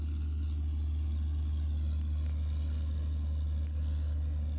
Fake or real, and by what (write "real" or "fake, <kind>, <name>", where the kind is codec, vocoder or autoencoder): real